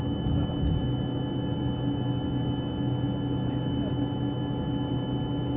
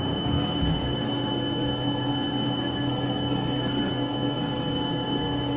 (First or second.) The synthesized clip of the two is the second